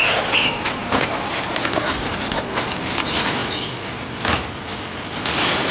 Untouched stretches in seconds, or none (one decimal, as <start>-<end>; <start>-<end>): 0.0-5.7